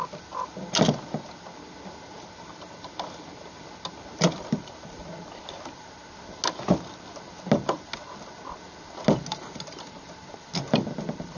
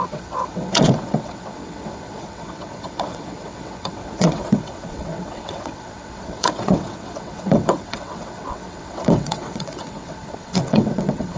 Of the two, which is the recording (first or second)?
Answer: first